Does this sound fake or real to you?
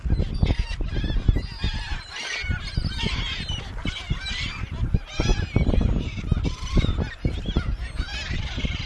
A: real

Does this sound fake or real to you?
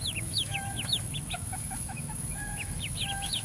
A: fake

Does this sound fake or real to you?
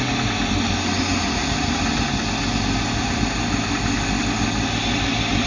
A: real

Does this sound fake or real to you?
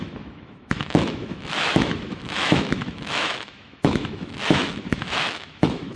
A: fake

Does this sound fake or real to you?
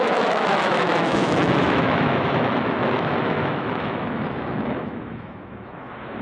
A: fake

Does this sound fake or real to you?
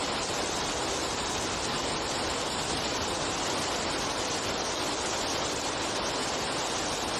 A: real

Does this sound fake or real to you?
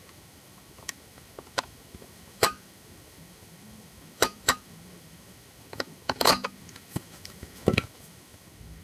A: fake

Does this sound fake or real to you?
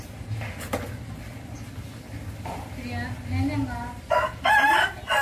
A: real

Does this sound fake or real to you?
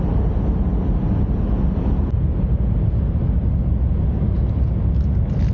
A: real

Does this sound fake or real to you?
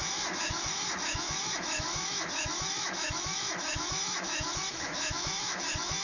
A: fake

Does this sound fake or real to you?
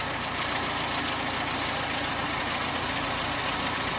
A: real